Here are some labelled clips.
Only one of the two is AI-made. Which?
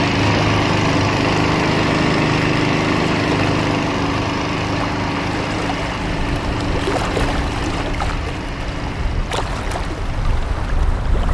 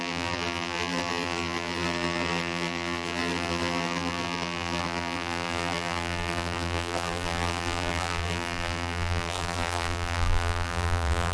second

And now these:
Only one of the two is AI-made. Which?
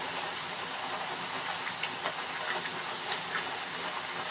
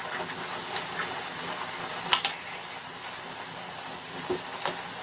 second